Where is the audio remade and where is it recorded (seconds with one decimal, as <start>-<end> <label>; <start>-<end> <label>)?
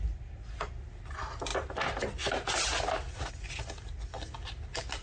0.0-5.0 recorded